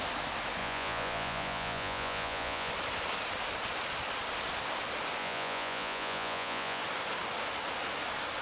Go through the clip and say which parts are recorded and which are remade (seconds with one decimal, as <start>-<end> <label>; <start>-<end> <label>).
0.0-0.6 recorded; 0.6-2.7 remade; 2.7-5.2 recorded; 5.2-6.8 remade; 6.8-8.4 recorded